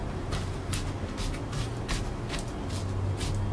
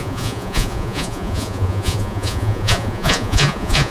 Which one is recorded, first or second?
first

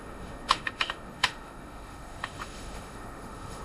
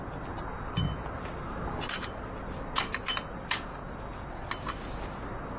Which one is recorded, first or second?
second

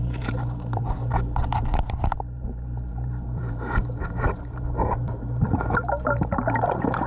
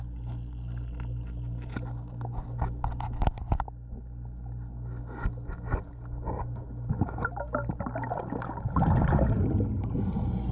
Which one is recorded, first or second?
second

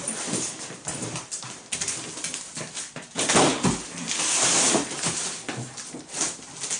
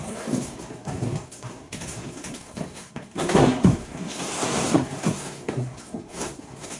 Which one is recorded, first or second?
first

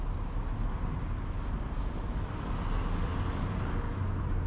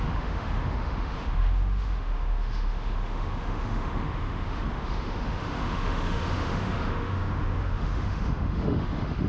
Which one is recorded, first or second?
first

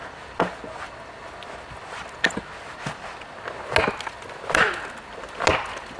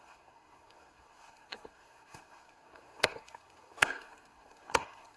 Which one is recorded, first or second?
first